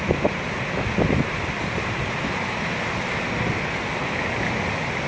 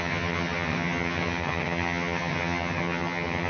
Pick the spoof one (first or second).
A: second